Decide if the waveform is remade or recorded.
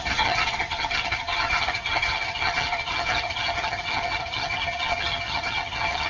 remade